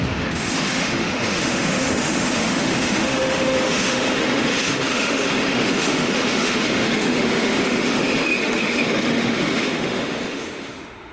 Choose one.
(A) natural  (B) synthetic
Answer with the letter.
B